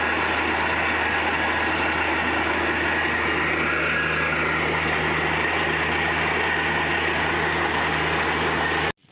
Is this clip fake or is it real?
real